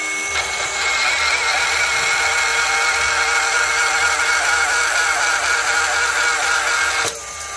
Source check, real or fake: real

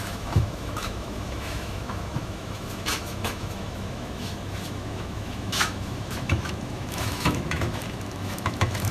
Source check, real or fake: fake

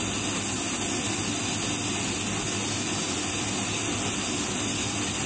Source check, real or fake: real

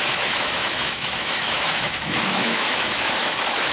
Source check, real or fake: fake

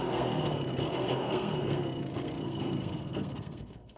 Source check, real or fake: fake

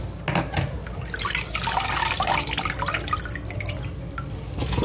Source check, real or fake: real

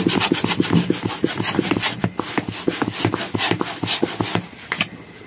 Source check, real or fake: real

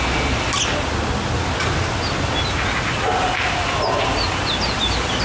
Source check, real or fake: real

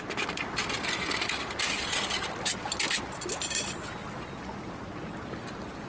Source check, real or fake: real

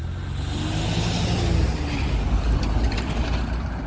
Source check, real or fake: real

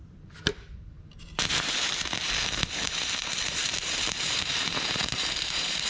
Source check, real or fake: fake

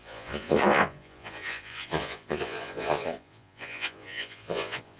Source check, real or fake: fake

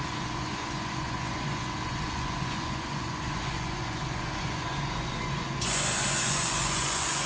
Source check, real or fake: fake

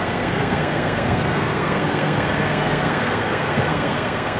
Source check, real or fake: fake